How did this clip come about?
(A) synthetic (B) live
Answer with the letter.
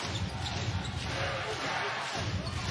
B